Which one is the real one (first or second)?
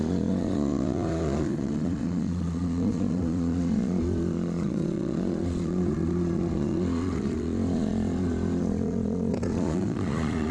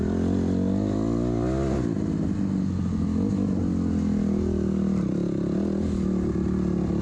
second